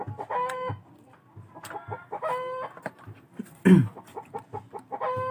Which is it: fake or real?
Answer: real